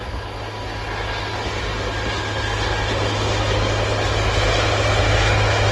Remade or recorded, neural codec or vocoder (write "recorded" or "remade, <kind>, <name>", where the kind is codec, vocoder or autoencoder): recorded